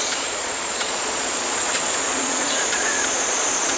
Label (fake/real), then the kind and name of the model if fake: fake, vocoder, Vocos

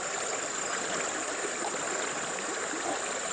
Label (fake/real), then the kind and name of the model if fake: real